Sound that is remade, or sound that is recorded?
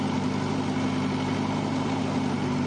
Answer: recorded